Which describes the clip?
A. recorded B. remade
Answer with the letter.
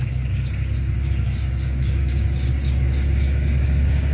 B